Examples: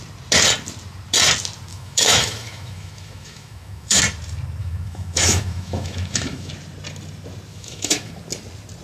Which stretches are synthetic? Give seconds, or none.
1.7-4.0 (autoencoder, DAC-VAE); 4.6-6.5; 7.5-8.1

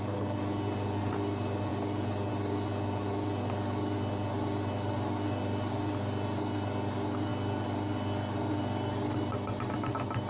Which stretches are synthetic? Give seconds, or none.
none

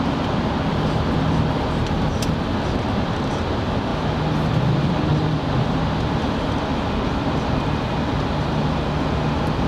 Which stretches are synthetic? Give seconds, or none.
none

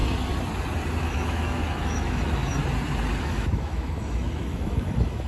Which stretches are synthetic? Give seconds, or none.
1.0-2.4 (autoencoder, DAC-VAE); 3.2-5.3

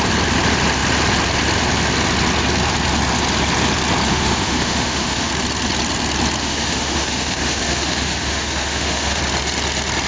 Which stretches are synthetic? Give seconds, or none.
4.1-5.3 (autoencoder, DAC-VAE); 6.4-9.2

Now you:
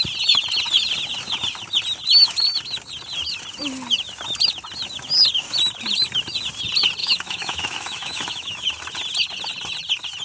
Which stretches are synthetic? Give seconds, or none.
7.0-8.7 (autoencoder, DAC-VAE)

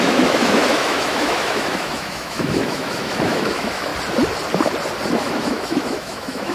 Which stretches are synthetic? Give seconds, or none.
0.0-3.9 (autoencoder, DAC-VAE); 5.1-6.5